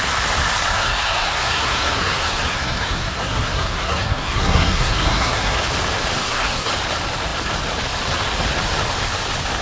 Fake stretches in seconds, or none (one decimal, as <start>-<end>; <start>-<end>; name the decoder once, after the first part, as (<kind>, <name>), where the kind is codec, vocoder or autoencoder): 0.7-5.6 (codec, SNAC); 6.2-6.7